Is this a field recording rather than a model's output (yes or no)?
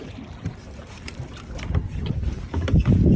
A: yes